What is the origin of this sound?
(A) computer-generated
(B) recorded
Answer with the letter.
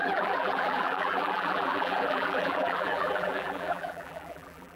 A